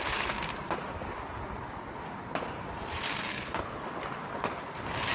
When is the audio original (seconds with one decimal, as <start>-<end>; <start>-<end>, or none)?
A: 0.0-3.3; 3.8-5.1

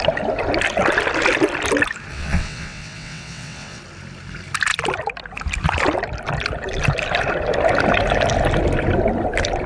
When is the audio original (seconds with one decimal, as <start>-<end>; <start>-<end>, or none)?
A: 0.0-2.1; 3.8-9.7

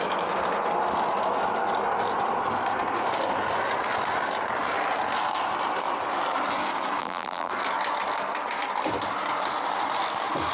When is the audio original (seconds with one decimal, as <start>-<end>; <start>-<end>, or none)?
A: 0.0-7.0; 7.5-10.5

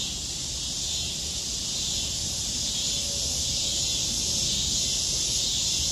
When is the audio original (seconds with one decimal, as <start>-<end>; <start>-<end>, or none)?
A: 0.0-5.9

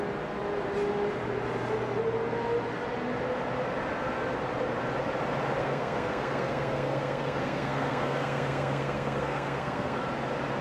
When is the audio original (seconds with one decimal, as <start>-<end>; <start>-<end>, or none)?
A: 0.0-5.6; 10.0-10.6